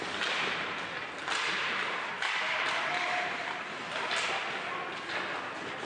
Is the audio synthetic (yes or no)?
no